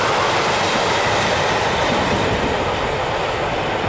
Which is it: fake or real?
fake